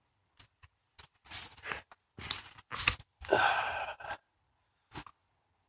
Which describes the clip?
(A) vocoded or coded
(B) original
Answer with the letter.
B